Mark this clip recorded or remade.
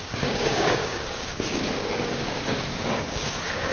remade